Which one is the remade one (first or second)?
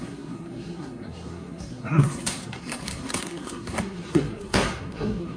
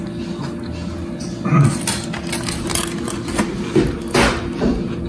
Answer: first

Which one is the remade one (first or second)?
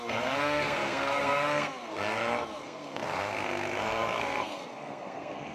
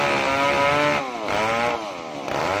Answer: first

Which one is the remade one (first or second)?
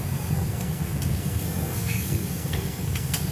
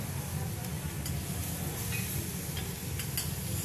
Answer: first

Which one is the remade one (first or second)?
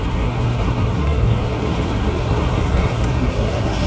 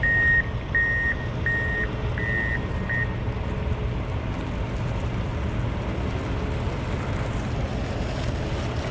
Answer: first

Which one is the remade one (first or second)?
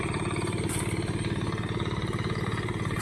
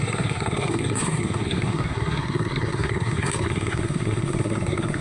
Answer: second